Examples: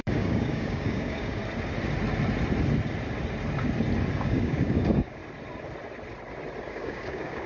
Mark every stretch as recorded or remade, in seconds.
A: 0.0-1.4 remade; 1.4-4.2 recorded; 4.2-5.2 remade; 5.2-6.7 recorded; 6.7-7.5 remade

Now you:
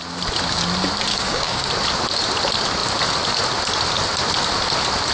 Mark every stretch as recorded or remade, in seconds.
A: 0.0-1.1 recorded; 1.1-1.7 remade; 1.7-5.1 recorded

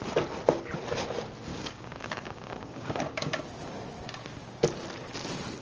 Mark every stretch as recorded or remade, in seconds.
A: 0.0-1.5 recorded; 1.5-3.4 remade; 3.4-5.6 recorded

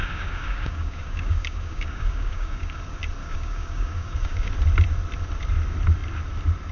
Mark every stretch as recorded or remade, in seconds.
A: 0.0-2.8 remade; 2.8-3.2 recorded; 3.2-4.5 remade; 4.5-6.7 recorded

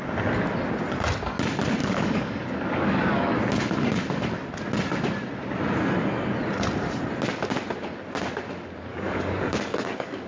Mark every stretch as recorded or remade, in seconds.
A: 0.0-1.8 recorded; 1.8-3.4 remade; 3.4-8.9 recorded; 8.9-10.3 remade

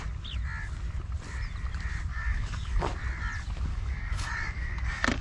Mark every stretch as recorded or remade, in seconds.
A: 0.0-2.1 recorded; 2.1-2.9 remade; 2.9-3.7 recorded; 3.7-5.2 remade

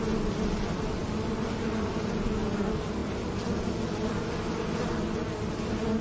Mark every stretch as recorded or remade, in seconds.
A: 0.0-6.0 recorded